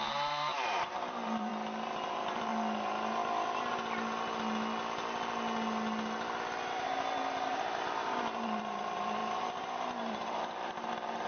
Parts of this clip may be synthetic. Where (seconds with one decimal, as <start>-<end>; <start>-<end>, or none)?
0.0-1.5; 2.1-2.5; 7.2-11.3